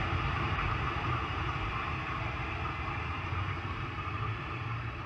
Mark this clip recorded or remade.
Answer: remade